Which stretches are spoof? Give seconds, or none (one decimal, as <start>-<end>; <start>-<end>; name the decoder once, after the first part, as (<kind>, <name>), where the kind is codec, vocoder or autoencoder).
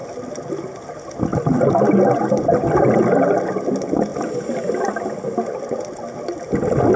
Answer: 1.3-2.3 (vocoder, BigVGAN v2); 4.1-5.6